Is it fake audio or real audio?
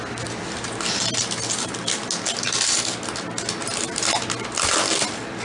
real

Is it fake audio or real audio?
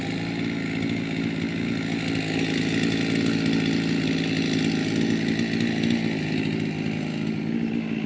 real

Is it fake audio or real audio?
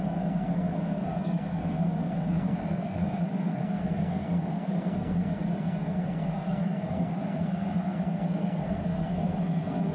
fake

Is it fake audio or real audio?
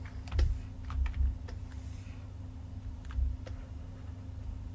fake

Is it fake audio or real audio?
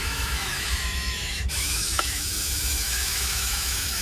fake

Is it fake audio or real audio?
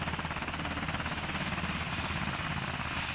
real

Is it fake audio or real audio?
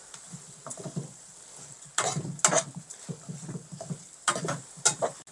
real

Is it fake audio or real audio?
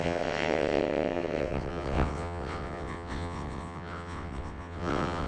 fake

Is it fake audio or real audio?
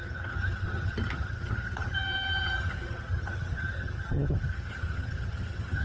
fake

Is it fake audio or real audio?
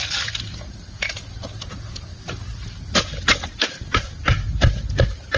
real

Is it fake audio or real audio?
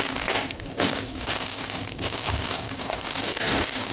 fake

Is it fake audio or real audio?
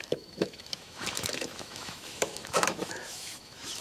fake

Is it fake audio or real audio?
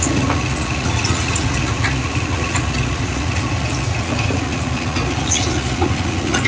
fake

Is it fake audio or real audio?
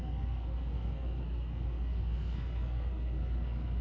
fake